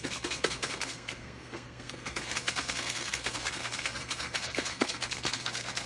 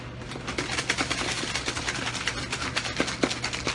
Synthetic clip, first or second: first